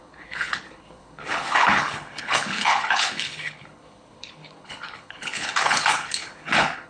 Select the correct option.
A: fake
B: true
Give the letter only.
A